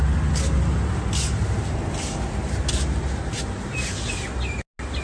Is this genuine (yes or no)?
yes